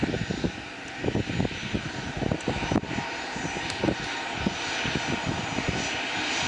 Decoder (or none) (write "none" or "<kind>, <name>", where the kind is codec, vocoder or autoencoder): none